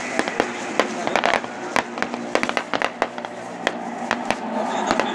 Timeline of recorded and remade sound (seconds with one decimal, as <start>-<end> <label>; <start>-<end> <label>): 0.0-5.1 recorded